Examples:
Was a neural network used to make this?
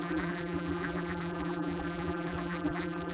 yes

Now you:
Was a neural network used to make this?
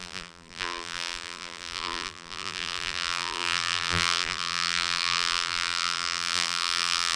yes